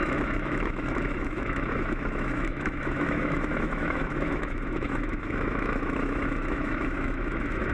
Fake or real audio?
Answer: fake